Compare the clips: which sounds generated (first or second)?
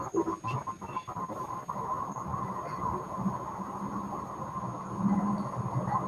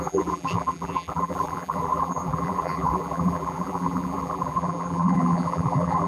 second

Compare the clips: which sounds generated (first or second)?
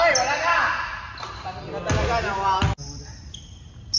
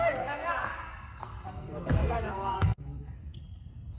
second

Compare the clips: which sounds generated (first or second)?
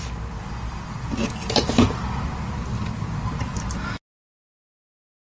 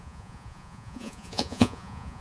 second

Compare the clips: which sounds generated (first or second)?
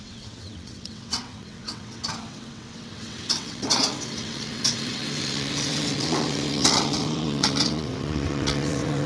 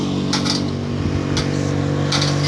first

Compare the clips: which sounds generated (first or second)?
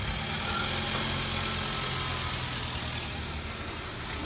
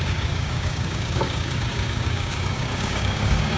second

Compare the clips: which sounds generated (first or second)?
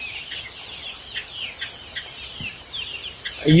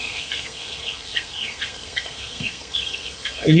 second